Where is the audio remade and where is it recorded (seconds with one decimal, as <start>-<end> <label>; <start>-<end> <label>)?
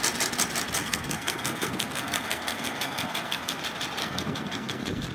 0.0-0.8 recorded; 0.8-3.6 remade; 3.6-4.0 recorded; 4.0-5.1 remade